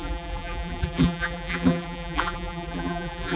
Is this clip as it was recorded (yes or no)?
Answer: no